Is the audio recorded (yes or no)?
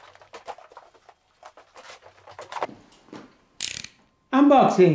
yes